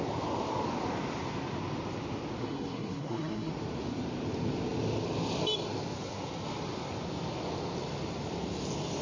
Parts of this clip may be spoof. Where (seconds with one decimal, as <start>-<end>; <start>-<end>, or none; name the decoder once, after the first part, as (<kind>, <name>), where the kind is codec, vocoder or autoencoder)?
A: 2.4-3.5 (codec, SNAC)